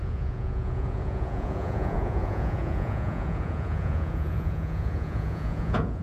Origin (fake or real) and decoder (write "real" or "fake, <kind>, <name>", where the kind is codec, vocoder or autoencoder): fake, vocoder, Vocos